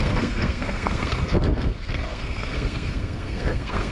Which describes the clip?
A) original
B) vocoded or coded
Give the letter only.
B